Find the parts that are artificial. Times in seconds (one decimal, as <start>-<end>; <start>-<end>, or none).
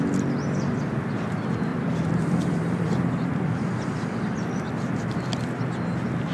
1.7-4.7